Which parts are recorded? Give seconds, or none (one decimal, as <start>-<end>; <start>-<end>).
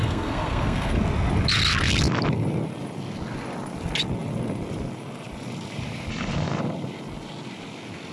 0.9-8.1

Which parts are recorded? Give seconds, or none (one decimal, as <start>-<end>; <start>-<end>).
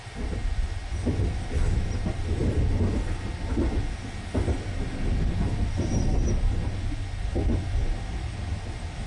0.0-0.5; 1.2-9.1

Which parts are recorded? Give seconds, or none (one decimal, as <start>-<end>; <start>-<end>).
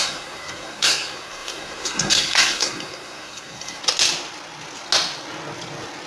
3.8-6.1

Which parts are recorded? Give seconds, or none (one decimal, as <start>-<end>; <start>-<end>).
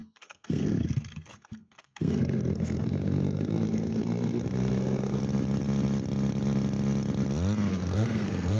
5.2-7.7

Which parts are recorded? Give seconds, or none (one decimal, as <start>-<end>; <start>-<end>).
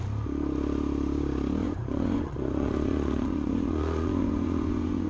0.0-1.6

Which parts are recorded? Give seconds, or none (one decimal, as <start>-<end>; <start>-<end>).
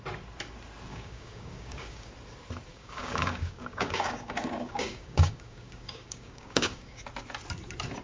0.0-0.9; 2.1-2.7; 7.0-8.0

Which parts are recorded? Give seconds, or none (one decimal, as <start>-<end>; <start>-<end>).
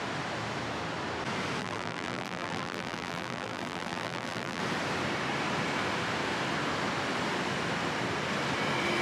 0.0-1.6; 4.6-9.0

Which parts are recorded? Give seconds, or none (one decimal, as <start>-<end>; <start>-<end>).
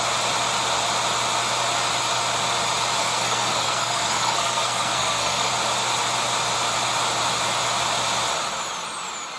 0.0-3.0; 5.5-9.4